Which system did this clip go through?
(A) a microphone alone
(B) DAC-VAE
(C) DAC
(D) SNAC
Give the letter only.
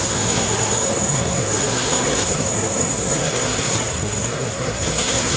D